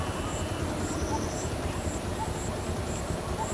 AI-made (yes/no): no